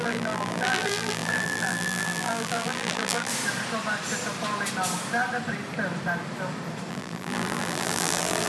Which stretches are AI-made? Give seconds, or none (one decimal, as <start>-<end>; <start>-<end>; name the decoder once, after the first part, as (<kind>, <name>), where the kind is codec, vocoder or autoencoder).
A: 0.0-3.3 (vocoder, BigVGAN v2); 6.9-8.5